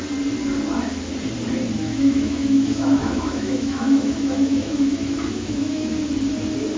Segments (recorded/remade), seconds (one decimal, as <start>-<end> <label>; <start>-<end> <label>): 0.0-1.9 recorded; 1.9-6.0 remade; 6.0-6.8 recorded